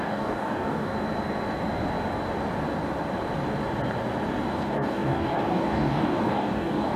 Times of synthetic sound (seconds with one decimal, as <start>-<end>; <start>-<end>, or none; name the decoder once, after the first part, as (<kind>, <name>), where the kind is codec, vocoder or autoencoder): 0.0-0.9 (codec, DAC); 4.5-7.0